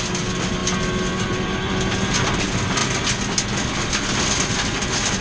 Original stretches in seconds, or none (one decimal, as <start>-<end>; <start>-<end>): 0.0-5.2